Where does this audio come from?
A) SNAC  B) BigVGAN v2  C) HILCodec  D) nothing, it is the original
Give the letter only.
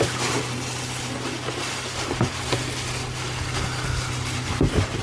D